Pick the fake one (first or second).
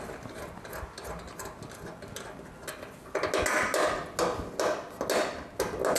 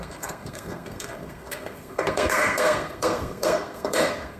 second